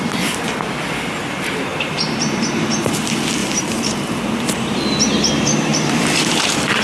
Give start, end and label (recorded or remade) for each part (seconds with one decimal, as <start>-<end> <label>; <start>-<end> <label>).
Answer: 0.0-1.7 recorded; 1.7-3.0 remade; 3.0-3.4 recorded; 3.4-5.0 remade; 5.0-5.7 recorded; 5.7-6.8 remade